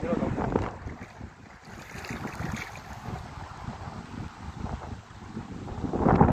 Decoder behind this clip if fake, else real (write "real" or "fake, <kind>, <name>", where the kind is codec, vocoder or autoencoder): real